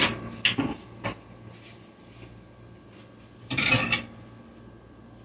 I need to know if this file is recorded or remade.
recorded